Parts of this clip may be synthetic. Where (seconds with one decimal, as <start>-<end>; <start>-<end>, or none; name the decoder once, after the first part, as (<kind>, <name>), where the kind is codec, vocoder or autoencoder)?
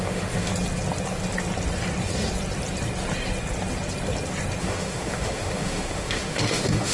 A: 0.0-0.5 (autoencoder, DAC-VAE); 4.6-6.9